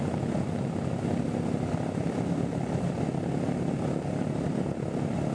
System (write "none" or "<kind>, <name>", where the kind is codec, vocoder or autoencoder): none